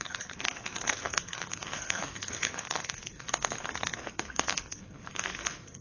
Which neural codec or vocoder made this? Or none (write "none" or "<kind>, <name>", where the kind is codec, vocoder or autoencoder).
codec, SNAC